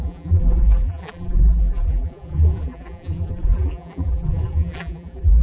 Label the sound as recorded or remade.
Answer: remade